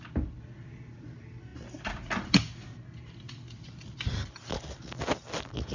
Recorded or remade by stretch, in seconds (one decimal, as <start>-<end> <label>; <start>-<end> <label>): 0.0-5.7 recorded